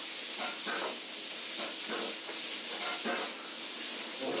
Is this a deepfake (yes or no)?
no